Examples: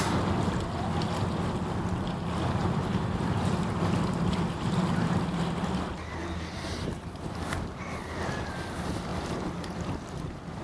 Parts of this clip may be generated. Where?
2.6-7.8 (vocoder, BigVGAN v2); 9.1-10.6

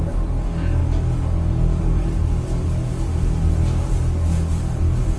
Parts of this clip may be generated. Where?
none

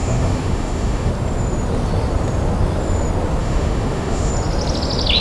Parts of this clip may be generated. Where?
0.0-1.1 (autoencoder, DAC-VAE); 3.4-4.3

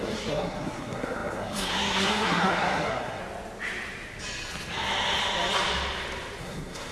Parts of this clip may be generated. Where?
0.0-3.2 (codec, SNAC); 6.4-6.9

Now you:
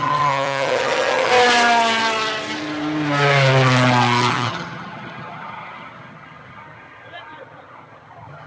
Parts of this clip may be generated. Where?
0.0-1.3 (vocoder, HiFi-GAN); 4.3-8.5